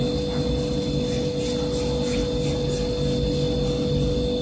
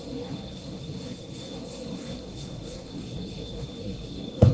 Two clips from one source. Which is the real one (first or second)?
first